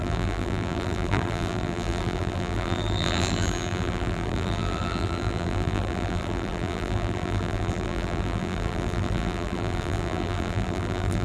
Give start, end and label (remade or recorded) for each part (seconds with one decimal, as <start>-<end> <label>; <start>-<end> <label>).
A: 0.0-11.2 remade